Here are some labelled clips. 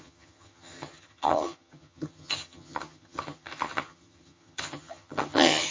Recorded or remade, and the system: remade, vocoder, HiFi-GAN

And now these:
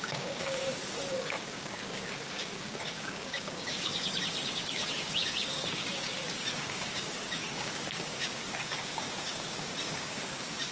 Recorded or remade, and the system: remade, codec, DAC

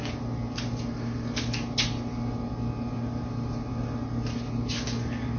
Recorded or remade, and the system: recorded